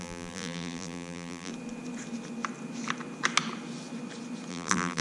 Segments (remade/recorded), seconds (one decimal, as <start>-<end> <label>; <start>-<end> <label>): 0.0-1.5 remade; 1.5-4.5 recorded; 4.5-5.0 remade